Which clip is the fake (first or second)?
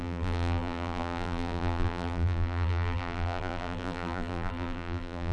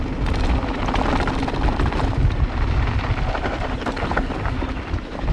first